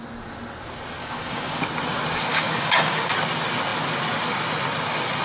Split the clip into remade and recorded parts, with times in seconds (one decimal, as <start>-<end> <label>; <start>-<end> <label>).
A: 0.0-1.0 recorded; 1.0-1.6 remade; 1.6-2.3 recorded; 2.3-3.0 remade; 3.0-5.2 recorded